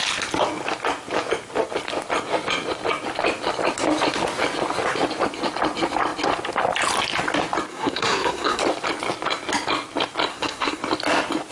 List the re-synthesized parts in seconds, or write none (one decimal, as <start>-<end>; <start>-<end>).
7.7-8.6; 10.3-10.8